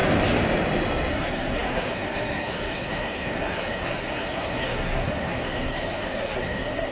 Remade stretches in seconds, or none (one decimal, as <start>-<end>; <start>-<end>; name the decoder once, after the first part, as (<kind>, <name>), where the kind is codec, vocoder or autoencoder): 1.1-6.9 (codec, SNAC)